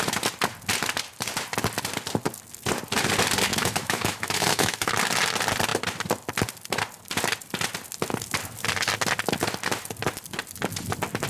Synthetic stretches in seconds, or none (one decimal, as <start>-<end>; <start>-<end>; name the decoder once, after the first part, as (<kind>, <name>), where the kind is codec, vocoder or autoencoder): 3.5-4.9 (autoencoder, DAC-VAE)